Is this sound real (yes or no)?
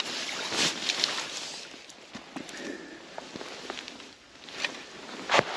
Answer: yes